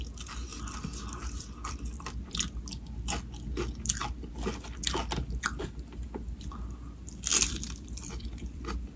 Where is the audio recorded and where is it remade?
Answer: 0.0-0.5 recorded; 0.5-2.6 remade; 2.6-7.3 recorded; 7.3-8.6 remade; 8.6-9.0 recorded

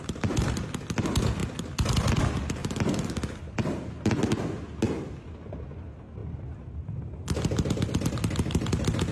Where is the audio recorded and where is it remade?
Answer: 0.0-2.6 recorded; 2.6-3.4 remade; 3.4-9.1 recorded

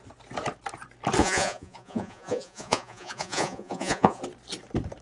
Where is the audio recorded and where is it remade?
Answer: 0.0-1.2 recorded; 1.2-4.2 remade; 4.2-5.0 recorded

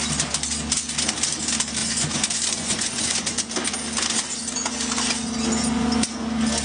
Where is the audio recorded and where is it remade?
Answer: 0.0-1.8 recorded; 1.8-3.5 remade; 3.5-6.6 recorded

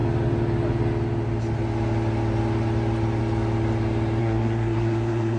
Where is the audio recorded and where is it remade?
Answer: 0.0-4.2 recorded; 4.2-5.4 remade